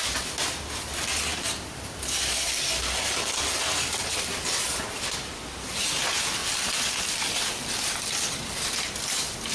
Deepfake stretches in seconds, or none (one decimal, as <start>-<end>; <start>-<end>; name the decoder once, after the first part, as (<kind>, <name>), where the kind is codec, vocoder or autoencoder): 1.3-5.4 (vocoder, BigVGAN v2); 6.4-8.6